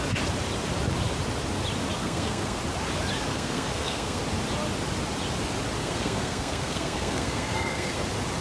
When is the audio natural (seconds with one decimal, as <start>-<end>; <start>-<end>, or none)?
0.0-2.0; 2.6-3.3; 4.2-5.8; 8.0-8.4